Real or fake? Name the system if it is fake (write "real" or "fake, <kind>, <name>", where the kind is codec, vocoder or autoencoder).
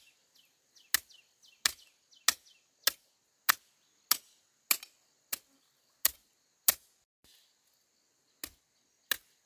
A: real